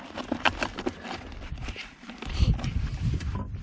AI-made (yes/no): no